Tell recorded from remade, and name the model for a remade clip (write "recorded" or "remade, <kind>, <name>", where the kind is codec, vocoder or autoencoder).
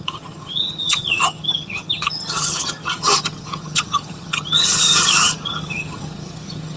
remade, vocoder, HiFi-GAN